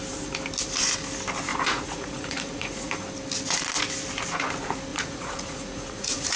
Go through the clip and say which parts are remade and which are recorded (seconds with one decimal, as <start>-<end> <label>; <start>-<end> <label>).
0.0-1.5 recorded; 1.5-2.9 remade; 2.9-4.9 recorded; 4.9-6.4 remade